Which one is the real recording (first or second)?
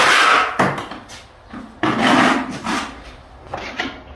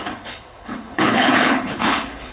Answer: first